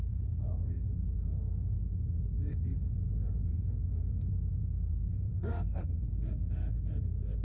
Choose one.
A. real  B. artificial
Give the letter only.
B